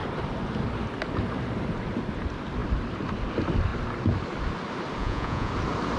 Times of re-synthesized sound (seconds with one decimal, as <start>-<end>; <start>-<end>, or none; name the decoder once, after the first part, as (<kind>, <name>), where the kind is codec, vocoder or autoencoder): 5.0-5.5 (vocoder, Vocos)